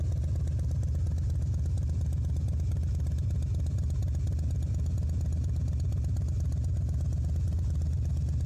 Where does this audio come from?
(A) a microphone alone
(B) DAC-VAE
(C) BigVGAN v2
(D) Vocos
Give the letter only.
A